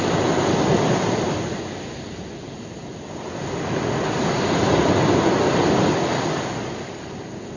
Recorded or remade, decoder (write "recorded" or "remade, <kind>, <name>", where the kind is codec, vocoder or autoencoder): recorded